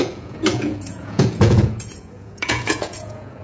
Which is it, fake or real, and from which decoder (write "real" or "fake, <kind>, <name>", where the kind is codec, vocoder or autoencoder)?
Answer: fake, vocoder, Vocos